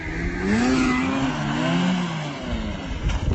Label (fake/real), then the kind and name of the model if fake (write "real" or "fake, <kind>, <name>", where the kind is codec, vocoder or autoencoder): real